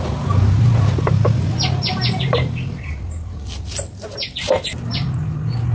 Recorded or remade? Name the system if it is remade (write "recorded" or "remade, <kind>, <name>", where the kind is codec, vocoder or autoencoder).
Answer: recorded